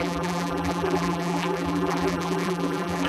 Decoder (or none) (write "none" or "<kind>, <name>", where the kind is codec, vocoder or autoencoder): vocoder, BigVGAN v2